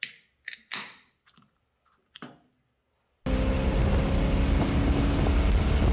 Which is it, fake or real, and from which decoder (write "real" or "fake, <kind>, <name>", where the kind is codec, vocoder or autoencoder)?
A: real